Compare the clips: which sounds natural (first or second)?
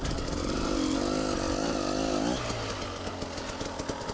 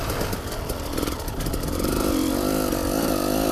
first